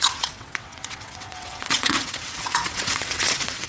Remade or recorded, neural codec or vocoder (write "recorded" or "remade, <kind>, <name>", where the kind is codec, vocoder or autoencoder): remade, vocoder, WaveNeXt